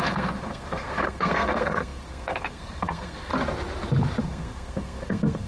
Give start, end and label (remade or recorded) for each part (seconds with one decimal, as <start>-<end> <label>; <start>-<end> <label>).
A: 0.0-3.3 remade; 3.3-4.2 recorded; 4.2-5.5 remade